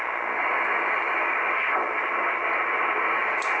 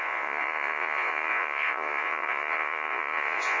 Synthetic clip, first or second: second